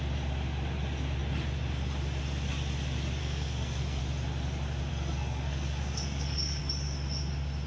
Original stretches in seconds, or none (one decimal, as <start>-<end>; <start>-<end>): 0.0-3.2; 4.0-4.9; 6.6-7.7